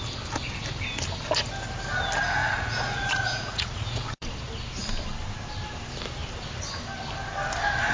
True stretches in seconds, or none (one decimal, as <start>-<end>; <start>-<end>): 0.0-2.4; 4.3-7.9

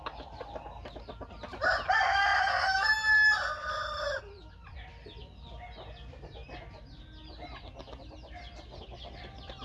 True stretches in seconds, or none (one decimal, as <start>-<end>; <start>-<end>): 0.0-9.6

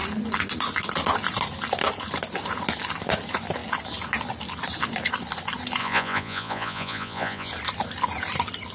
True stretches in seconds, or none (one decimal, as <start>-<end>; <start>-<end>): 0.0-5.8; 7.5-8.7

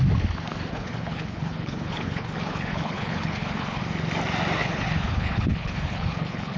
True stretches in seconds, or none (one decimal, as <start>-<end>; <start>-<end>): 0.0-0.7; 3.8-4.6

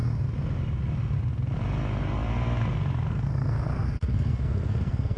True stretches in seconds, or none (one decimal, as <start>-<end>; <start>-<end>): 0.0-3.1

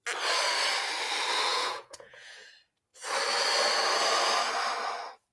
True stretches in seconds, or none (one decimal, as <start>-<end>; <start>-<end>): 0.0-1.5; 2.5-5.3

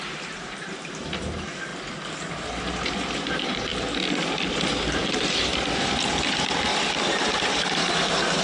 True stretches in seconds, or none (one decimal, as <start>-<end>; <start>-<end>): 1.7-2.7; 3.7-4.8; 5.5-7.1

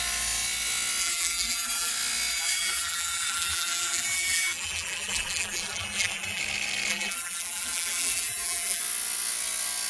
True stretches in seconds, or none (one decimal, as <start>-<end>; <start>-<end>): 0.0-1.0; 1.9-2.3; 6.4-6.9; 8.8-9.9